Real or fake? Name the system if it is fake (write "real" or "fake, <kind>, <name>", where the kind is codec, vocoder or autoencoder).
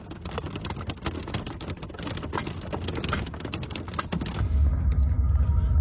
real